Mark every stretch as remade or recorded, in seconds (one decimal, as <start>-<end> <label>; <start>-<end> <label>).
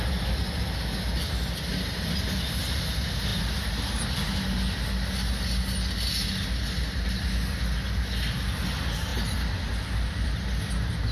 0.0-9.1 recorded; 9.1-10.4 remade; 10.4-11.1 recorded